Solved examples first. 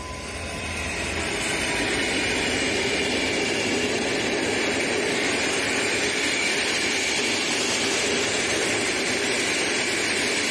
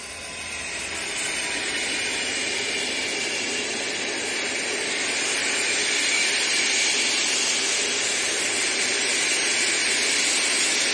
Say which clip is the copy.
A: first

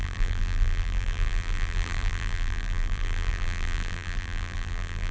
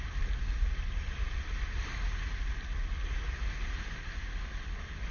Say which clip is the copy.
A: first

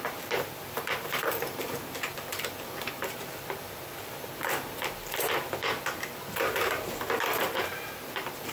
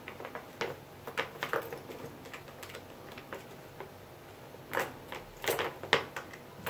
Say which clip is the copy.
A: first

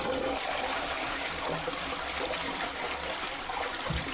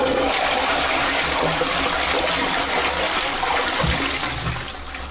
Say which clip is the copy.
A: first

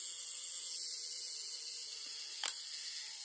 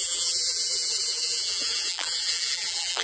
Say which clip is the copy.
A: second